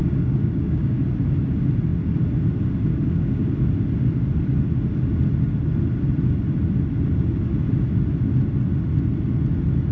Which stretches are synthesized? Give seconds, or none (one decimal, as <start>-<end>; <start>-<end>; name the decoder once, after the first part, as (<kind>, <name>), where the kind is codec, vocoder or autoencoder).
0.0-1.0 (codec, DAC); 2.9-3.5